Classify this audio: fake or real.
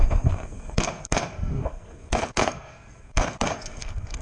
fake